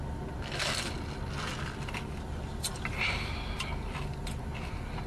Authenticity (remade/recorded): recorded